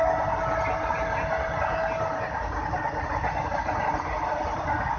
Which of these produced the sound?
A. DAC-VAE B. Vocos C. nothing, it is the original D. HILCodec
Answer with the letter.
C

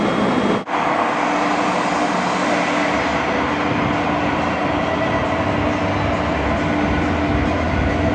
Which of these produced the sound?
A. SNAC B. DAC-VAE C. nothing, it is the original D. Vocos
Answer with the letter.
C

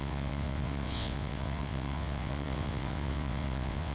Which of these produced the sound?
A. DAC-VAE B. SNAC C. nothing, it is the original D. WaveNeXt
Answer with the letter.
D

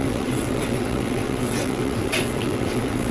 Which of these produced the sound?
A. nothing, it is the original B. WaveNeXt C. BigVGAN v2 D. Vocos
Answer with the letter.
B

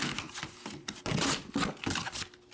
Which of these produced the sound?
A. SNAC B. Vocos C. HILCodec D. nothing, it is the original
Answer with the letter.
D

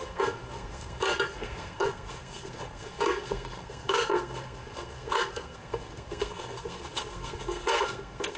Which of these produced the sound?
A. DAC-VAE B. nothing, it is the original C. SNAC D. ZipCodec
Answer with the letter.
C